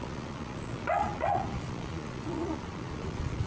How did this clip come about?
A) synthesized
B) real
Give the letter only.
A